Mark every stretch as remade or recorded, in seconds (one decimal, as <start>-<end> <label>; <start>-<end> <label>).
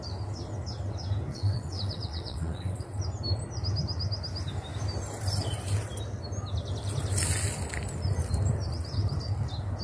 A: 0.0-1.3 recorded; 1.3-3.0 remade; 3.0-9.8 recorded